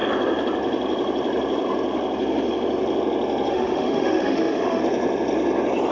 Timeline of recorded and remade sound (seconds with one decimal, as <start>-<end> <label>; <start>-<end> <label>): 0.0-3.5 recorded; 3.5-4.8 remade; 4.8-5.9 recorded

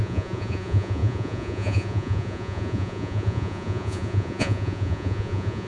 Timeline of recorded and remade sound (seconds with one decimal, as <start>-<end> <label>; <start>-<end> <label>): 0.0-5.7 remade

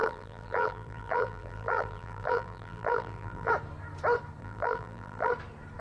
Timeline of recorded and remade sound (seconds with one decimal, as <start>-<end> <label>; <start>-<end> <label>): 0.0-3.5 remade; 3.5-4.4 recorded; 4.4-5.3 remade; 5.3-5.8 recorded

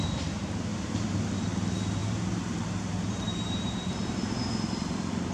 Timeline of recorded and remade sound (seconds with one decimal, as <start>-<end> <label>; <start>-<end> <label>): 0.0-0.7 recorded; 0.7-1.3 remade; 1.3-2.0 recorded; 2.0-5.3 remade

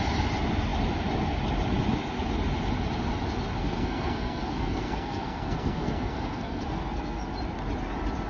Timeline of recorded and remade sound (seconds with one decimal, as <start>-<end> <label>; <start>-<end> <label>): 0.0-3.6 recorded; 3.6-7.2 remade; 7.2-8.3 recorded